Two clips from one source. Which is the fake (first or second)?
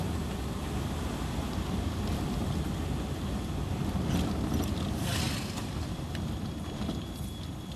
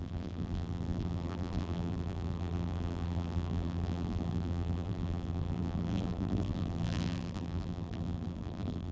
second